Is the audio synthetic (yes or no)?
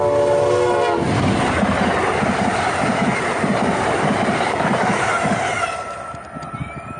no